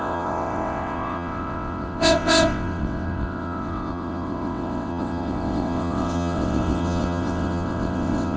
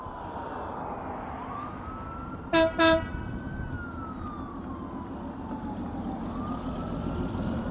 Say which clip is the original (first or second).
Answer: second